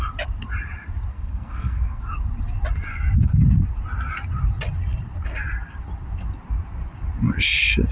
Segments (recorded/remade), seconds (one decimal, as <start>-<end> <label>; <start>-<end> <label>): 0.0-1.1 recorded; 1.1-2.0 remade; 2.0-2.9 recorded; 2.9-3.5 remade; 3.5-7.9 recorded